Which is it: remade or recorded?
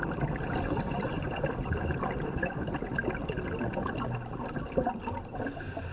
recorded